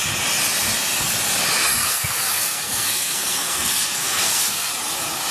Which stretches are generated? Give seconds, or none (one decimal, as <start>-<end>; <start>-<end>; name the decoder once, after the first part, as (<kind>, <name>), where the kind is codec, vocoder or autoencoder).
1.8-4.7 (codec, SNAC)